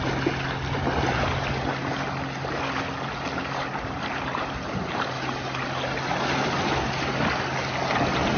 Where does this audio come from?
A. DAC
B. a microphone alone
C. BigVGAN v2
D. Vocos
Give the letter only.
B